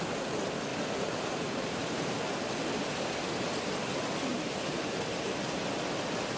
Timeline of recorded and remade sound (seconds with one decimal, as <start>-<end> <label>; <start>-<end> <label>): 0.0-0.7 recorded; 0.7-2.2 remade; 2.2-4.3 recorded; 4.3-5.6 remade; 5.6-6.4 recorded